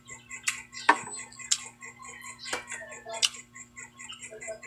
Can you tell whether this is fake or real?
real